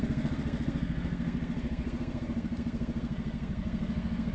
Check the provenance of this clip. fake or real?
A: fake